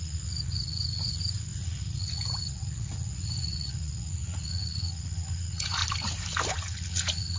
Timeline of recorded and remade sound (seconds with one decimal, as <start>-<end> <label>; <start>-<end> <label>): 0.0-5.8 remade; 5.8-6.5 recorded; 6.5-7.4 remade